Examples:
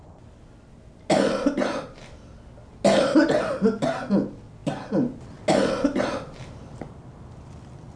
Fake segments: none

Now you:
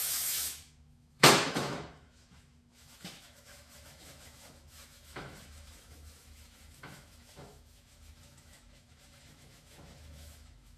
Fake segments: 0.0-10.8 (autoencoder, DAC-VAE)

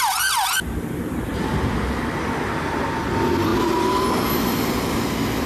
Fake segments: none

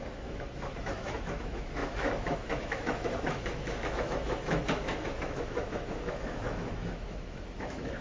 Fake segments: 0.0-8.0 (autoencoder, DAC-VAE)

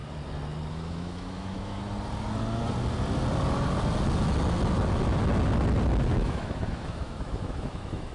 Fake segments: 0.7-1.8 (autoencoder, DAC-VAE); 6.1-8.1

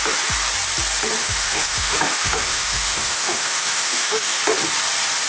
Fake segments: 1.2-4.4 (autoencoder, DAC-VAE)

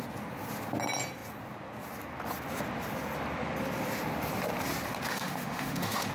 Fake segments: 5.1-6.1 (autoencoder, DAC-VAE)